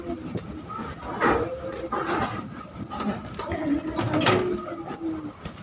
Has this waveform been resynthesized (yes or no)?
no